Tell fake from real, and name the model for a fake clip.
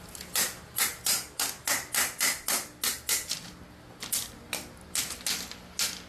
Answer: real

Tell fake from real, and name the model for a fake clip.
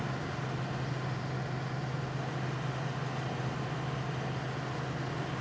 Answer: real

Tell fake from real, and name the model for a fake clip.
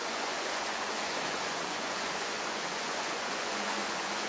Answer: fake, vocoder, Vocos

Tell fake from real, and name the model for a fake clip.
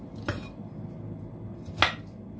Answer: real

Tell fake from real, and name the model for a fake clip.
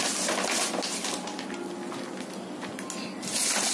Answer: real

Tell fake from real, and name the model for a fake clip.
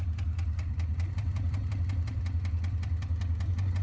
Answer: fake, vocoder, BigVGAN v2